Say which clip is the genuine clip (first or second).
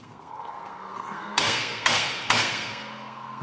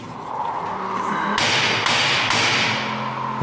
second